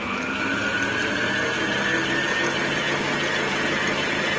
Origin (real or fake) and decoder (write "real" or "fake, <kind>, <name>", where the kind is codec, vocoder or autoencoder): real